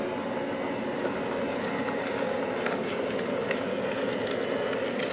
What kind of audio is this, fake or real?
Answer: real